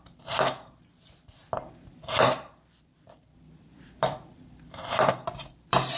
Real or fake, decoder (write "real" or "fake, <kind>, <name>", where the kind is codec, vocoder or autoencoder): fake, vocoder, BigVGAN v2